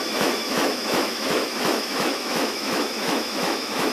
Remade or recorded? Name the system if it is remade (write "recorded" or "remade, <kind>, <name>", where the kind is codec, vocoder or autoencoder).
remade, autoencoder, DAC-VAE